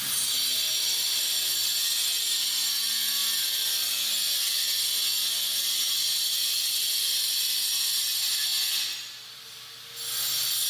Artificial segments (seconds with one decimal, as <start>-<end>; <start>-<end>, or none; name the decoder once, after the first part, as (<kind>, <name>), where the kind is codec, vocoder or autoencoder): none

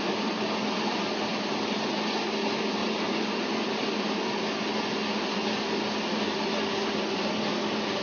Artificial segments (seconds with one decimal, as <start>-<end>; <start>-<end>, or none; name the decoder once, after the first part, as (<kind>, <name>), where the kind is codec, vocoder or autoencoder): 2.8-4.4 (vocoder, BigVGAN v2)

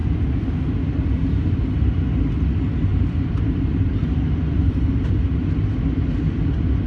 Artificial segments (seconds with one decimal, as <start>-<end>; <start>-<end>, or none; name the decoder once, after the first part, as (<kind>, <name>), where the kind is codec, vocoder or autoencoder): 2.9-5.1 (vocoder, BigVGAN v2)

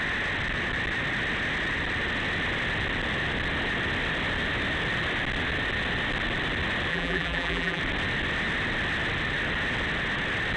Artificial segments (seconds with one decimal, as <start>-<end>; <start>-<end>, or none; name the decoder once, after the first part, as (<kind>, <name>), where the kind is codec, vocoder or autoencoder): 6.9-7.8 (vocoder, BigVGAN v2)

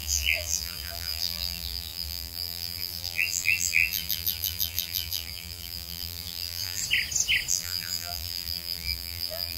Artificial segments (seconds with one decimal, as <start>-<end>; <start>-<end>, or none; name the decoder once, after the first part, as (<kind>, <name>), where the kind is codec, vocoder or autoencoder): 0.0-6.8 (vocoder, BigVGAN v2); 7.5-9.6

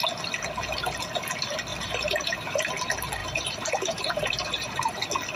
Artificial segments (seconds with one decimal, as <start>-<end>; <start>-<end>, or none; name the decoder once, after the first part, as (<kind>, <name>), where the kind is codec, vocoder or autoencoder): 1.7-2.7 (vocoder, BigVGAN v2); 3.2-4.9

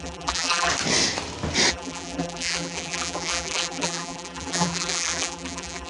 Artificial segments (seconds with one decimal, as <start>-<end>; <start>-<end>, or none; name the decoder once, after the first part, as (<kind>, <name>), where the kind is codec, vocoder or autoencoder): 0.0-0.7 (vocoder, BigVGAN v2); 1.7-5.9